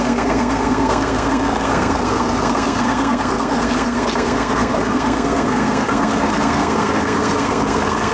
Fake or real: fake